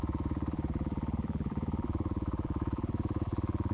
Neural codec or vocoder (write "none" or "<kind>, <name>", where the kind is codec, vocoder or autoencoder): vocoder, BigVGAN v2